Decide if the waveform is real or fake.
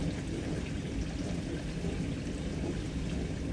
real